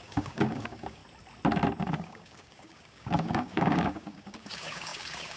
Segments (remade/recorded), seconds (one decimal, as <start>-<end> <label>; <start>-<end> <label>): 0.0-1.0 remade; 1.0-1.8 recorded; 1.8-5.4 remade